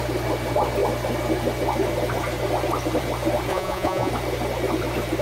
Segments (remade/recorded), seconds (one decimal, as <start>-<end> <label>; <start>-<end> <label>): 0.0-3.5 recorded; 3.5-4.1 remade; 4.1-5.2 recorded